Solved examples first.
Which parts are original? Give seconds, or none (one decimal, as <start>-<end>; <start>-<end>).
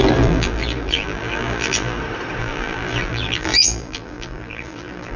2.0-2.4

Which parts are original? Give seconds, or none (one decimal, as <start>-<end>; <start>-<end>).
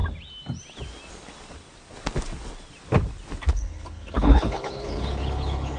0.0-3.5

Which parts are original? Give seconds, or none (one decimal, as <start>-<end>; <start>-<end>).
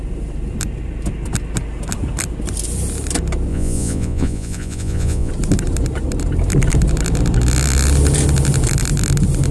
0.0-3.5; 5.3-9.5